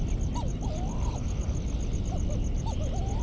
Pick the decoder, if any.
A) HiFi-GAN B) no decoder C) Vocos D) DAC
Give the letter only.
B